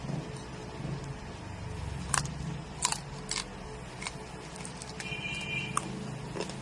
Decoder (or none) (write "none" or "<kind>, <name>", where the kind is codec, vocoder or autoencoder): none